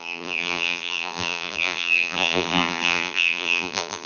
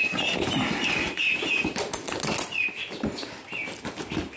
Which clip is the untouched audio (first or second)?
second